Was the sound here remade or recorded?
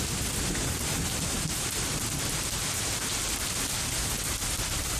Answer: recorded